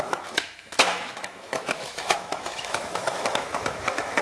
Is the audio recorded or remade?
remade